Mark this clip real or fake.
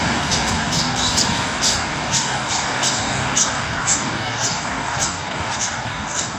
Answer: fake